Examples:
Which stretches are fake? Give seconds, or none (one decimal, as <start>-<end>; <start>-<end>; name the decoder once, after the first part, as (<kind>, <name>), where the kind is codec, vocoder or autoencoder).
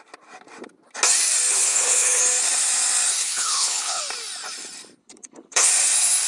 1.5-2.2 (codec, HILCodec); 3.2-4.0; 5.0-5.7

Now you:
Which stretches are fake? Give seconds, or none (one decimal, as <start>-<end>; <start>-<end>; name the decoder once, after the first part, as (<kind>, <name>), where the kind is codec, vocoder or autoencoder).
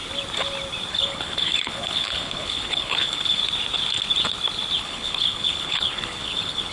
0.9-3.4 (codec, HILCodec); 4.8-6.7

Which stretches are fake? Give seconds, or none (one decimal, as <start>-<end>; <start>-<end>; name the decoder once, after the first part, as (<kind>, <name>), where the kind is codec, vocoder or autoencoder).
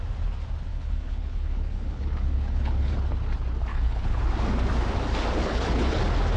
0.7-2.9 (codec, HILCodec); 3.7-4.2; 5.4-6.0